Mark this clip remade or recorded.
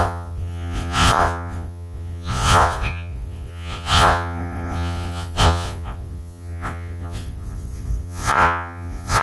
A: remade